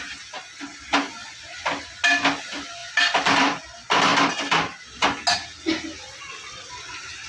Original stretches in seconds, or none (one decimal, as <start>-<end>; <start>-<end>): 0.0-2.8; 3.6-7.3